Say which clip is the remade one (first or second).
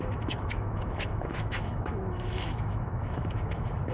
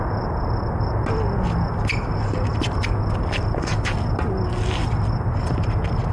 first